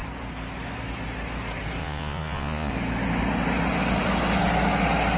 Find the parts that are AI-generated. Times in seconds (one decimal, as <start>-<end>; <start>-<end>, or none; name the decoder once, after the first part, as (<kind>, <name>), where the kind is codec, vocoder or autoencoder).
1.8-2.7 (vocoder, Vocos)